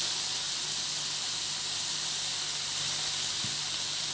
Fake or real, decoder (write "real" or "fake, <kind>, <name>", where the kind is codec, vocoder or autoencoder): real